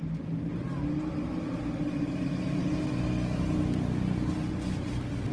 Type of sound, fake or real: real